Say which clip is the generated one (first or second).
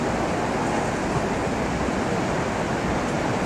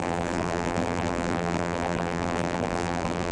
second